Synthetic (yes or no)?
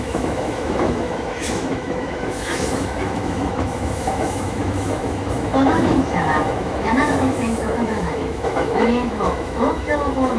yes